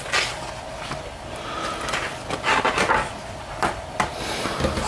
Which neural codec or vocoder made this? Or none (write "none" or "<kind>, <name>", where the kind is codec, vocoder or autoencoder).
none